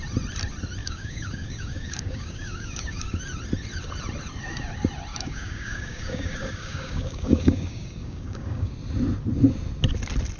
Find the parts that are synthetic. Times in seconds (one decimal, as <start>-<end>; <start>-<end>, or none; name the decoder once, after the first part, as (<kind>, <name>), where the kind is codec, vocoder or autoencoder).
0.8-3.2 (codec, DAC); 5.1-8.7